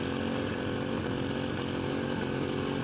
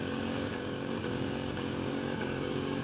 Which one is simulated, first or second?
second